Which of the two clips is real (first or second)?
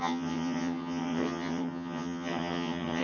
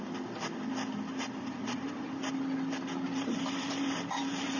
second